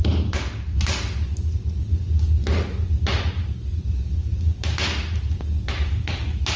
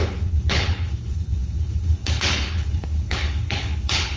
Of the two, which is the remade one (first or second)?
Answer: second